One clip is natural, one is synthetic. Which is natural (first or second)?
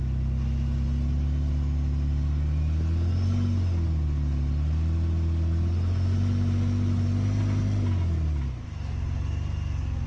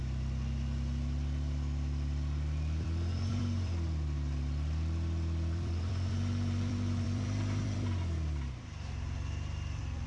first